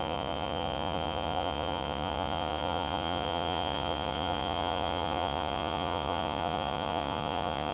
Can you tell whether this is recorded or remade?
remade